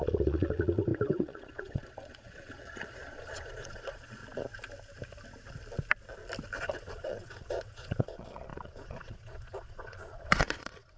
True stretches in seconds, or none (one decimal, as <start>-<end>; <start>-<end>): 4.2-6.6